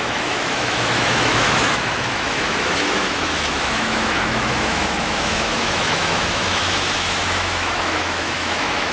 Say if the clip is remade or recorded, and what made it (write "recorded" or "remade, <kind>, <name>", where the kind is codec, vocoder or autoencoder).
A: remade, autoencoder, DAC-VAE